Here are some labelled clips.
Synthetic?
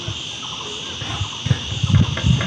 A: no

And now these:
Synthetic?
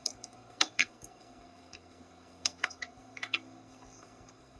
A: yes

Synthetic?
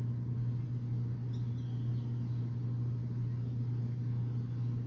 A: no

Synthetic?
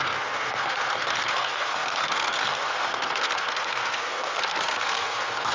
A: yes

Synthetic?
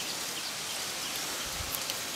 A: no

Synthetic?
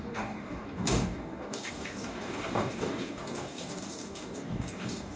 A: yes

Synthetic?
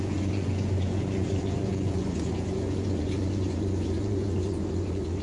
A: yes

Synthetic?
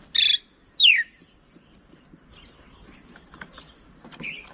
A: no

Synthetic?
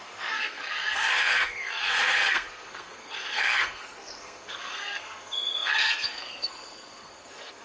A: yes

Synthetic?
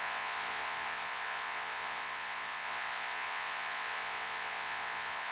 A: yes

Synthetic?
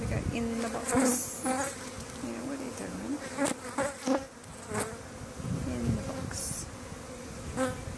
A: no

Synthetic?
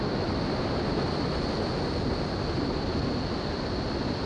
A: no